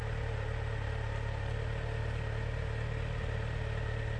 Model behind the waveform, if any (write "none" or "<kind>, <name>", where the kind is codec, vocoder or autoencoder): none